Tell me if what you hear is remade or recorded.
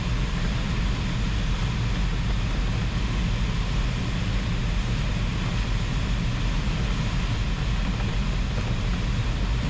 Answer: recorded